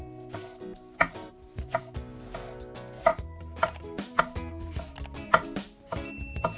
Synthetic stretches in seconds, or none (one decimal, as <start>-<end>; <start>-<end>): 1.2-1.8; 3.1-4.2